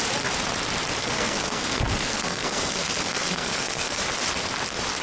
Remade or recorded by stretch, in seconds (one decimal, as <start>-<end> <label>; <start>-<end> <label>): 0.0-1.0 recorded; 1.0-4.0 remade; 4.0-5.0 recorded